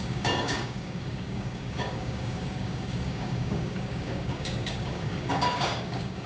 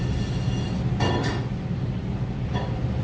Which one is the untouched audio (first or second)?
second